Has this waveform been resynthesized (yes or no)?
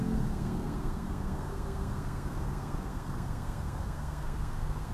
yes